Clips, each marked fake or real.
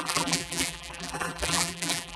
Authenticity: fake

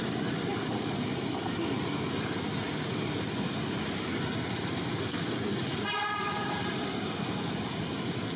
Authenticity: real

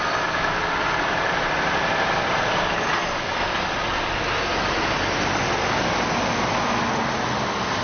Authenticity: real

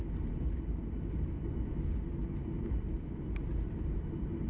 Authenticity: real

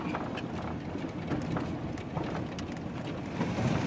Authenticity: real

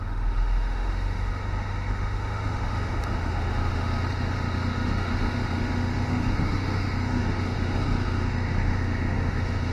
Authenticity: fake